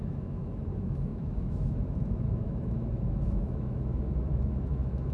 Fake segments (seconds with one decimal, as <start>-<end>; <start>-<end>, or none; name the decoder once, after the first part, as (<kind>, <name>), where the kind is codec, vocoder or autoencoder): 0.0-5.1 (autoencoder, DAC-VAE)